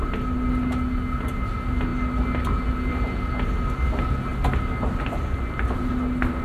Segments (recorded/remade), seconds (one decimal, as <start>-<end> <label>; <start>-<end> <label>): 0.0-6.4 recorded